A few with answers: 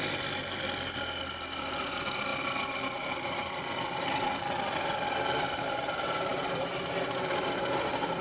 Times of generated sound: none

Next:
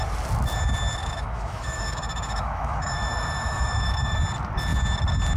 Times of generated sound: 1.0-4.2 (autoencoder, DAC-VAE)

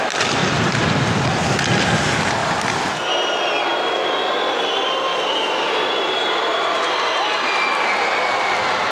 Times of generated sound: 0.4-1.5 (vocoder, BigVGAN v2); 2.4-3.1; 5.1-7.5

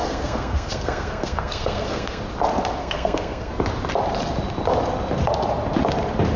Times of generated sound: 0.0-2.2 (codec, SNAC); 2.8-3.5